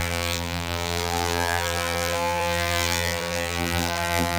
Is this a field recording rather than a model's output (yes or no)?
no